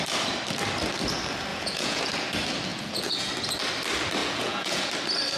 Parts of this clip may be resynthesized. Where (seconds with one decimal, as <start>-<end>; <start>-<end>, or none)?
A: 1.5-2.0; 2.7-3.3; 4.2-4.9